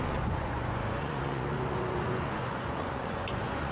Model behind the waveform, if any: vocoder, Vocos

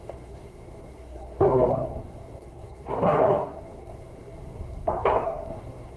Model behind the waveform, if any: codec, SNAC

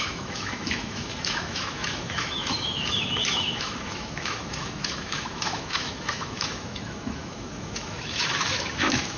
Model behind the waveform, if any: autoencoder, DAC-VAE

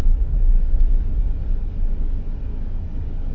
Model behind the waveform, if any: codec, DAC